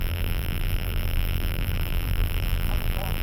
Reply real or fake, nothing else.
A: fake